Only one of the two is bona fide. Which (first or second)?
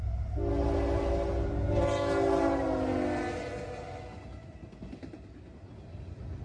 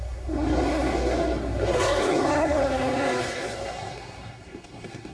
first